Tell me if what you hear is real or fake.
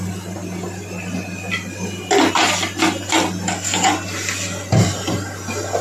real